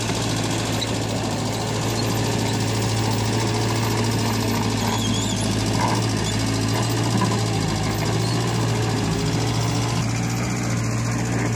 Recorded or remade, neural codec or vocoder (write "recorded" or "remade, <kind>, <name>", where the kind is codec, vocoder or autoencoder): recorded